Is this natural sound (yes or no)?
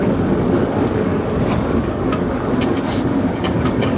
no